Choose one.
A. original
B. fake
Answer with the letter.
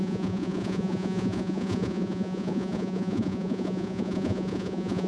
B